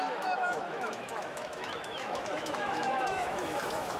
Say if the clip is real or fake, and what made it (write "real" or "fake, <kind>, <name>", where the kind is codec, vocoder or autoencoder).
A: fake, autoencoder, DAC-VAE